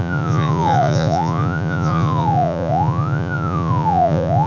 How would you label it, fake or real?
fake